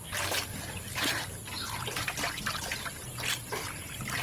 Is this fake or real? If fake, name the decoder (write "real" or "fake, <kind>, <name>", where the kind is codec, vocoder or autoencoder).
real